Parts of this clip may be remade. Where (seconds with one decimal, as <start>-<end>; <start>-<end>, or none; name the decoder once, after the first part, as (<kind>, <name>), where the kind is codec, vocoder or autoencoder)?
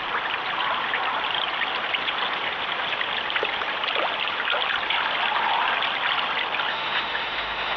6.7-7.8 (autoencoder, DAC-VAE)